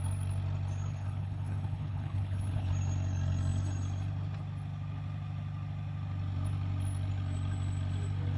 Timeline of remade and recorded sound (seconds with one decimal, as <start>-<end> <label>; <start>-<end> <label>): 0.0-0.9 recorded; 0.9-2.7 remade; 2.7-8.4 recorded